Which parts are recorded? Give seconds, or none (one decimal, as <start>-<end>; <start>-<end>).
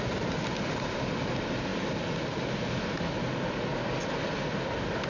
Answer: 0.0-5.1